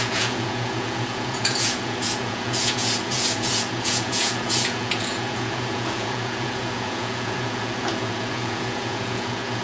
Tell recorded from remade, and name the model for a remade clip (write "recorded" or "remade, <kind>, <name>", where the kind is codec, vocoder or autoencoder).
remade, vocoder, Vocos